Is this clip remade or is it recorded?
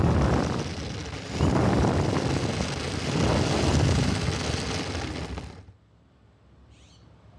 recorded